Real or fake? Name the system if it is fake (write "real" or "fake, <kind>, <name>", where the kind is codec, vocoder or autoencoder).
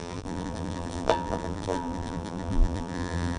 fake, vocoder, BigVGAN v2